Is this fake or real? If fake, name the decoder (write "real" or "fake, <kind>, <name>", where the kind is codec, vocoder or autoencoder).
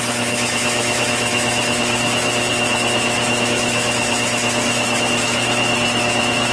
fake, autoencoder, DAC-VAE